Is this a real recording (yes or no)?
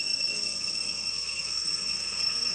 no